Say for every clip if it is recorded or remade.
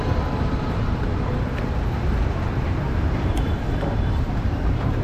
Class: remade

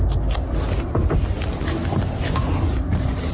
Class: recorded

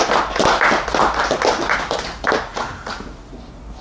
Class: recorded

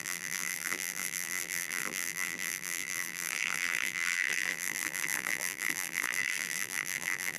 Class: remade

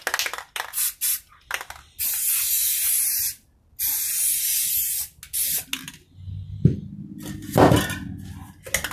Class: recorded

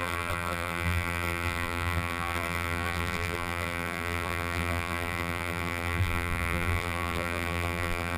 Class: remade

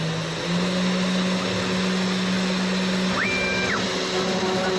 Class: recorded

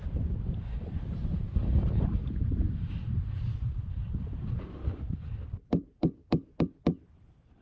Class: remade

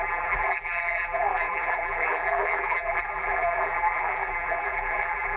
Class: remade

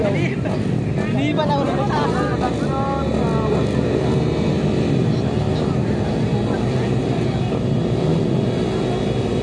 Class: recorded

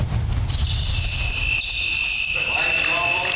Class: remade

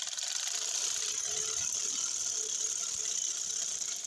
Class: remade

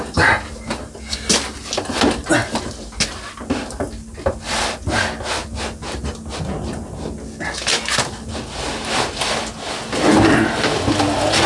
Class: recorded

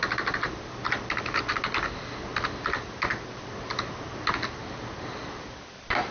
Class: recorded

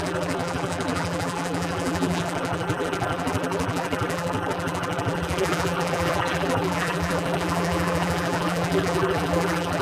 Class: remade